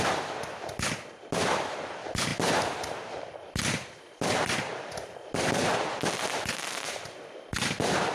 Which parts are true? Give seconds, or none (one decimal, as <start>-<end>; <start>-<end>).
0.0-8.1